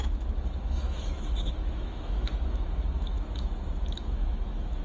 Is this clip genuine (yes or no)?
no